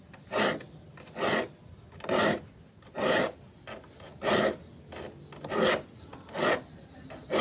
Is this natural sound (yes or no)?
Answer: yes